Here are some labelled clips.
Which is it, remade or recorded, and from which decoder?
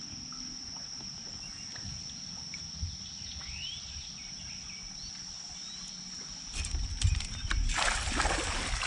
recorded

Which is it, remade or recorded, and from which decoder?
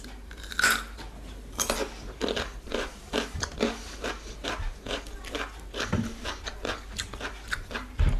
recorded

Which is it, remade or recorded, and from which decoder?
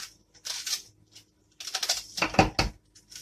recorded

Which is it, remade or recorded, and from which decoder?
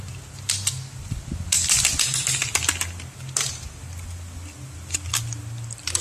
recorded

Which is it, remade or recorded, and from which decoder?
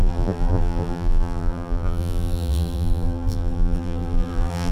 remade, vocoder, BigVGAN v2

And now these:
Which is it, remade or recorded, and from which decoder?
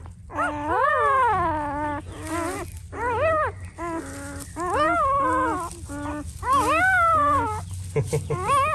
recorded